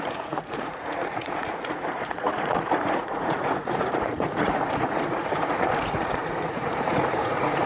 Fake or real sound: fake